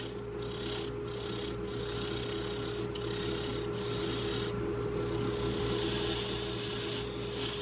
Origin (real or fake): real